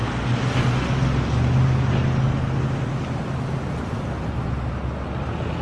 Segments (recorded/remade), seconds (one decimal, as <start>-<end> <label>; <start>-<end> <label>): 0.0-5.6 recorded